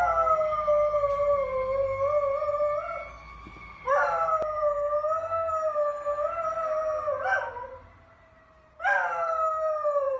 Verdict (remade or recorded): recorded